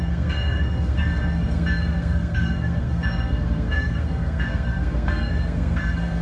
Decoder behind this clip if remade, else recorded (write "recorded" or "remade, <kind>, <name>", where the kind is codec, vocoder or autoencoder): remade, codec, SNAC